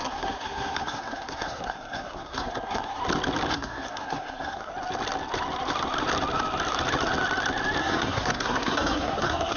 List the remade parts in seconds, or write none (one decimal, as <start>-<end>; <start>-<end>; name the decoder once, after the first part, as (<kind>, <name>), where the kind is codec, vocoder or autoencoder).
0.0-3.0 (codec, SNAC); 3.5-4.7; 7.8-9.6